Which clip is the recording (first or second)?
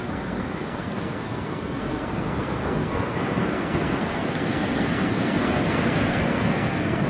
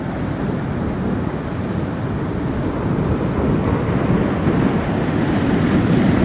second